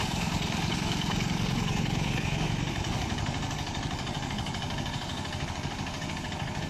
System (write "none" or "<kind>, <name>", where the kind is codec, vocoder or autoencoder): codec, DAC